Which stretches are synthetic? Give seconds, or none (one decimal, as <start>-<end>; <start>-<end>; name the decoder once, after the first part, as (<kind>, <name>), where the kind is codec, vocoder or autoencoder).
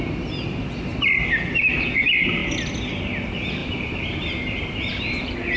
3.6-5.0 (vocoder, BigVGAN v2)